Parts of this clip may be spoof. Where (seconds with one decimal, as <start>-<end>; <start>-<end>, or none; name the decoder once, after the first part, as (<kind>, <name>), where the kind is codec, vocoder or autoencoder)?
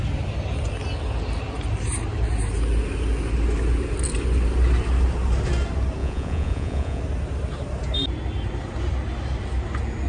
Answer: 6.0-7.0 (vocoder, Vocos)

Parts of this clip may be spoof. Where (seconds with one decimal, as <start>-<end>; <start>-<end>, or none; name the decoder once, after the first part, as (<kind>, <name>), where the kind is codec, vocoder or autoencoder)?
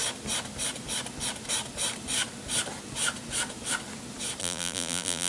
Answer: 4.4-5.3 (vocoder, BigVGAN v2)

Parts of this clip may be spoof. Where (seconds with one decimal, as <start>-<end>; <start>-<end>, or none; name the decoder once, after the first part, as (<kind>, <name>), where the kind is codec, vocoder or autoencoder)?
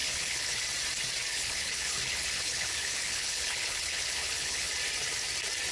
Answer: 0.0-0.6 (codec, HILCodec); 1.3-4.7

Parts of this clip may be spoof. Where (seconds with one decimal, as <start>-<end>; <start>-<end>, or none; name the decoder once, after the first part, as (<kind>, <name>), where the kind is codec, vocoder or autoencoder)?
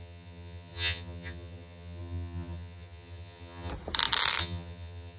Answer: 0.0-3.7 (vocoder, HiFi-GAN); 4.4-5.2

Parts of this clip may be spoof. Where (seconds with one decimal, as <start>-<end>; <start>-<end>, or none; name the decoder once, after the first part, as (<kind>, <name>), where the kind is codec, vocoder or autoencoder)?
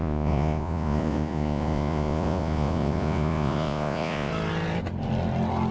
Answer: 0.0-4.3 (vocoder, Vocos)